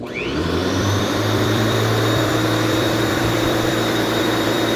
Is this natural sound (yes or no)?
no